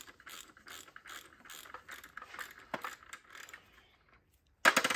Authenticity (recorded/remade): recorded